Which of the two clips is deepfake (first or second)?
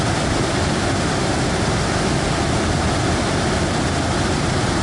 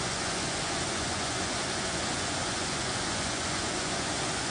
second